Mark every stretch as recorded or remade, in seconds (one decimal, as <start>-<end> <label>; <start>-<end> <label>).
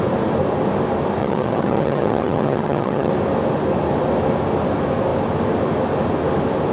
0.0-1.2 recorded; 1.2-3.1 remade; 3.1-6.7 recorded